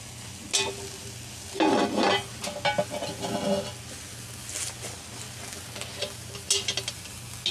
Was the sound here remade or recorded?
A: recorded